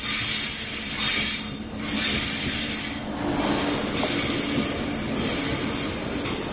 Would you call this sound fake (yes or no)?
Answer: no